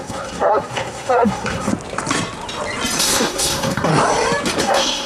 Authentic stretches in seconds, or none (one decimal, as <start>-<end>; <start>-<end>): 1.7-3.0; 3.9-4.6